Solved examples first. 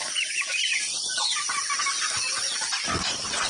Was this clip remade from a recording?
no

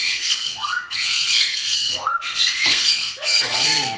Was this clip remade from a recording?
yes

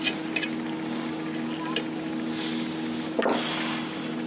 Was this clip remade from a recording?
no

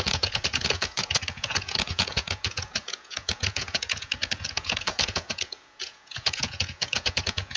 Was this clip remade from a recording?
yes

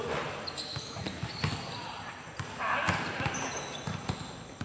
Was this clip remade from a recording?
no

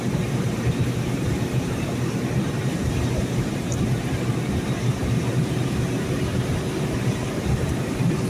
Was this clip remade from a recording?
yes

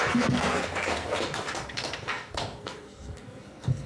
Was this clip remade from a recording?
yes